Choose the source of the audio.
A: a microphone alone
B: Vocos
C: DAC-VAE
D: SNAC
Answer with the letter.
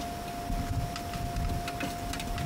A